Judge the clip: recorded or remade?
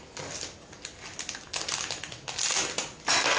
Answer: recorded